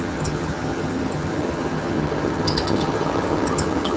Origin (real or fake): fake